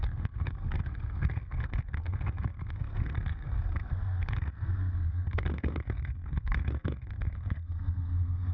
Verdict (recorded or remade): remade